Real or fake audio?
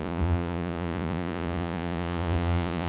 fake